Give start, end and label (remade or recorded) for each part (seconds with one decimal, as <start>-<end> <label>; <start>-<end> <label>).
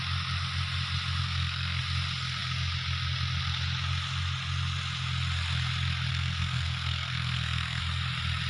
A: 0.0-1.2 recorded; 1.2-1.8 remade; 1.8-6.1 recorded; 6.1-7.8 remade; 7.8-8.5 recorded